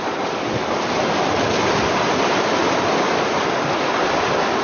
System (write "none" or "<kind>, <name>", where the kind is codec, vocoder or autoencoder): none